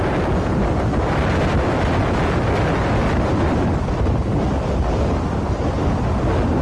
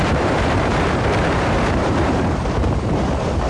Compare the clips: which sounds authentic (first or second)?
first